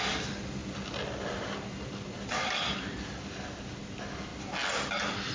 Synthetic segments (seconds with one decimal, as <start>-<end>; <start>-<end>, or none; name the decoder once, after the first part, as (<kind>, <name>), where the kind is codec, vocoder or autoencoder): none